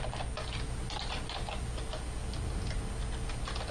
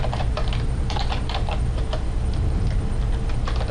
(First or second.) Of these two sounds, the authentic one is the first